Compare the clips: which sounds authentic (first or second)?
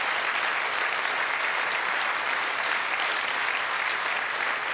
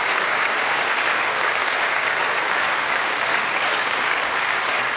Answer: first